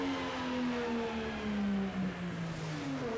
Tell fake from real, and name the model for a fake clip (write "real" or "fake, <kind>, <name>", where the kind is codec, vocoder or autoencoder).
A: real